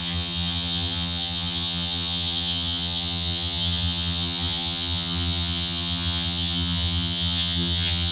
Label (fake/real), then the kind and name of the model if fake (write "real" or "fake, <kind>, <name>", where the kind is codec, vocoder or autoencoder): fake, vocoder, HiFi-GAN